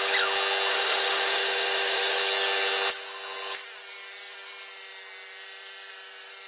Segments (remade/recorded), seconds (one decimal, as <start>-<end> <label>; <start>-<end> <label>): 0.0-0.7 recorded; 0.7-2.2 remade; 2.2-6.5 recorded